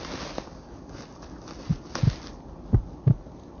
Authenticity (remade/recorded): recorded